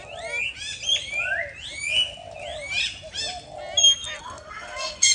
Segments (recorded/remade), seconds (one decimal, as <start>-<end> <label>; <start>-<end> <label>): 0.0-4.2 recorded; 4.2-5.1 remade